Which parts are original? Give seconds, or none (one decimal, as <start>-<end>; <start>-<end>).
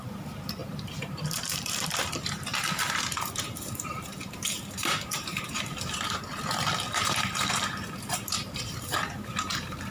none